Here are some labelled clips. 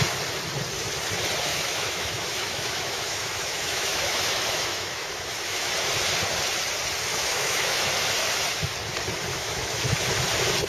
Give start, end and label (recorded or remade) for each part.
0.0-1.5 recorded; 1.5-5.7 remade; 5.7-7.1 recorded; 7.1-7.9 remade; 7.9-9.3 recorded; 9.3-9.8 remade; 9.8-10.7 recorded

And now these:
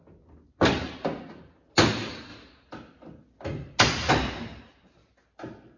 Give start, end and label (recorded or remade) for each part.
0.0-5.8 recorded

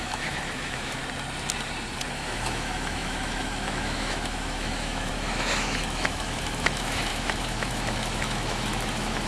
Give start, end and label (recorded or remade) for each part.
0.0-1.0 remade; 1.0-2.1 recorded; 2.1-9.3 remade